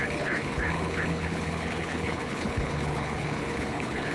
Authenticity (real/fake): fake